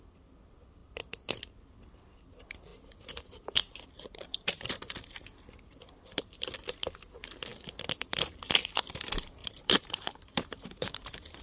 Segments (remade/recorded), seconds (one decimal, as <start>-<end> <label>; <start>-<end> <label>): 0.0-9.4 recorded; 9.4-11.4 remade